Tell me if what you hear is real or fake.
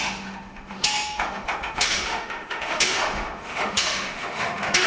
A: fake